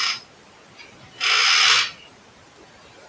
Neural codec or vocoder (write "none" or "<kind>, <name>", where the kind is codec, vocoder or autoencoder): none